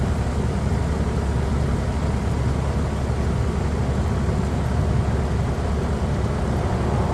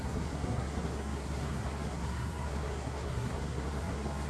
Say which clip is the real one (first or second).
first